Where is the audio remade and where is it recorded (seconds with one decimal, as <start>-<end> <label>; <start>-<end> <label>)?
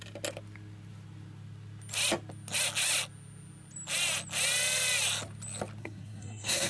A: 0.0-5.8 recorded; 5.8-6.7 remade